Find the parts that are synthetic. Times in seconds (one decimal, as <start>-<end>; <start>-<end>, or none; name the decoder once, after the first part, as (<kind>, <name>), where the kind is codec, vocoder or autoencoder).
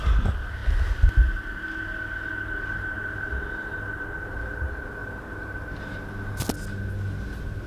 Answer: none